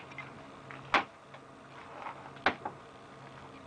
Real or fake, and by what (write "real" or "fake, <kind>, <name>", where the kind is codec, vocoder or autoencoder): real